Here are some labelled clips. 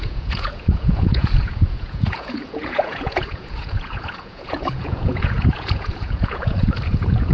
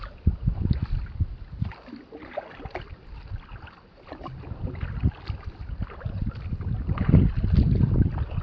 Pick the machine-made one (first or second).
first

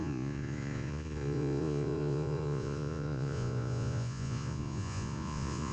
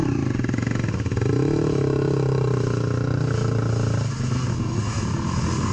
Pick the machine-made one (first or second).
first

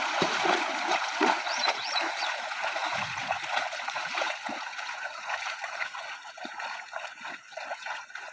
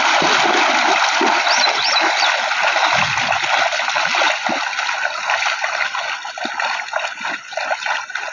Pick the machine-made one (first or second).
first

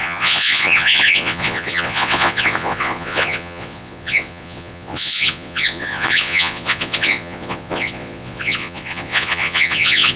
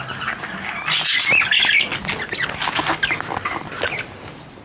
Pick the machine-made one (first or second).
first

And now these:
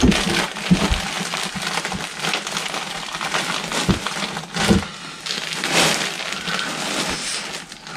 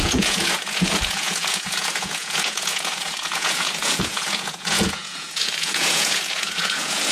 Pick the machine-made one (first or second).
second